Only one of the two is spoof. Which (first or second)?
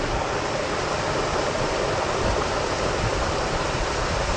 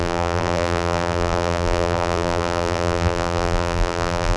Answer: second